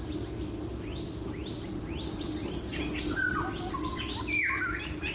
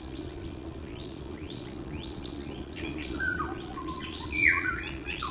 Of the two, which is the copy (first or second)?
second